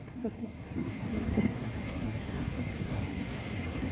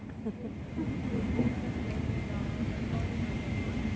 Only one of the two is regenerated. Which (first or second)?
first